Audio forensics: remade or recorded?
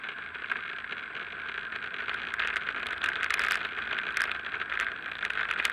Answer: recorded